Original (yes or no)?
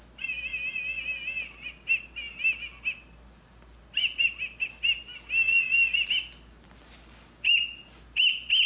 yes